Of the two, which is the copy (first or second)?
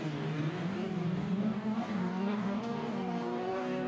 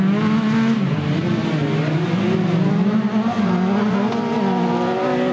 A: first